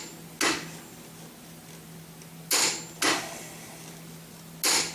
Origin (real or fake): real